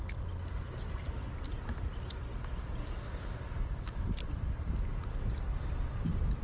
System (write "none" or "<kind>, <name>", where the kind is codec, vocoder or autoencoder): none